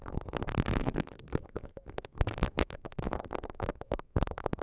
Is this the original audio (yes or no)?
no